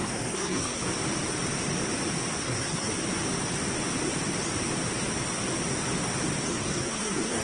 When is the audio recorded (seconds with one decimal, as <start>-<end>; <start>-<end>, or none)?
0.8-2.4; 2.9-6.5